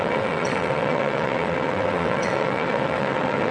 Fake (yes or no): yes